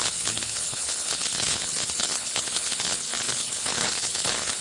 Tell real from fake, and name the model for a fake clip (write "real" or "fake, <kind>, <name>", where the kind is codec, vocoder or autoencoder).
fake, codec, HILCodec